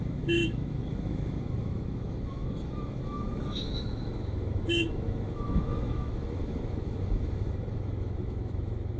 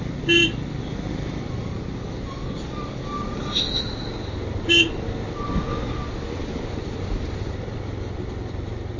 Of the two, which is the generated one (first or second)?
first